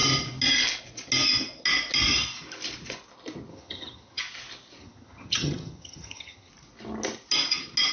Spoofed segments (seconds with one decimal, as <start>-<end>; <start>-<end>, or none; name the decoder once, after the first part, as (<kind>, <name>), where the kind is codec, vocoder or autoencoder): 3.5-4.2 (vocoder, HiFi-GAN); 4.8-6.5